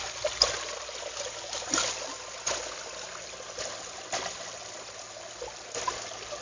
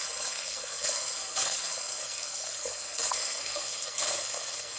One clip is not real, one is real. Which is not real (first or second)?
second